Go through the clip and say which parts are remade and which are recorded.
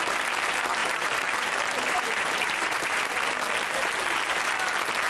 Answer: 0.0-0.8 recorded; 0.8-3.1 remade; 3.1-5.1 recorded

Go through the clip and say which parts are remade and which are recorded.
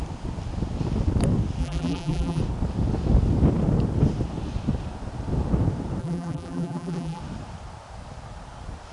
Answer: 0.0-1.6 recorded; 1.6-2.4 remade; 2.4-6.0 recorded; 6.0-7.2 remade; 7.2-8.9 recorded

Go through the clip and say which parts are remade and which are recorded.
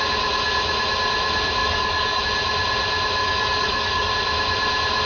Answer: 0.0-1.6 recorded; 1.6-2.2 remade; 2.2-3.2 recorded; 3.2-4.1 remade; 4.1-5.1 recorded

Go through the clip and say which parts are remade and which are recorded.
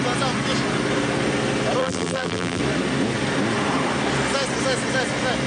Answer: 0.0-1.8 recorded; 1.8-2.6 remade; 2.6-5.5 recorded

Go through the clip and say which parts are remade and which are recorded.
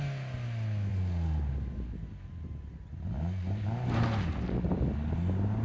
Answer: 0.0-5.6 recorded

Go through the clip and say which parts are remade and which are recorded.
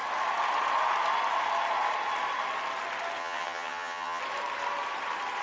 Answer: 0.0-3.2 recorded; 3.2-4.2 remade; 4.2-5.4 recorded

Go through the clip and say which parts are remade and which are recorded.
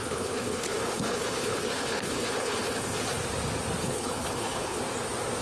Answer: 0.0-3.2 remade; 3.2-3.8 recorded; 3.8-4.8 remade; 4.8-5.4 recorded